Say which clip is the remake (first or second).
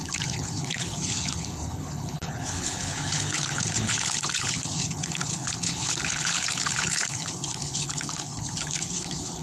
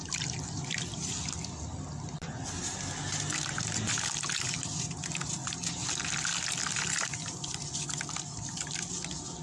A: first